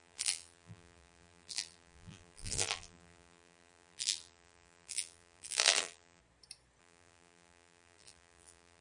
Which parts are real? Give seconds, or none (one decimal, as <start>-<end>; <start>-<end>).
6.2-6.8